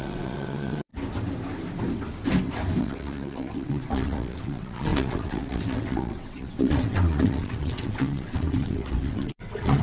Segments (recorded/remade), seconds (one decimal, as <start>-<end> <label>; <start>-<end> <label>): 0.0-0.9 remade; 0.9-2.8 recorded; 2.8-9.8 remade